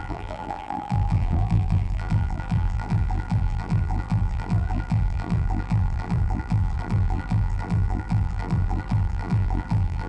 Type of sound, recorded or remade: remade